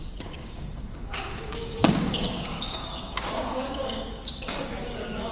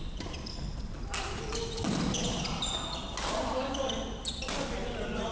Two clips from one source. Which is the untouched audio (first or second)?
second